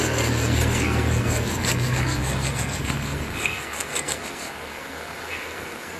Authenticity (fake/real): fake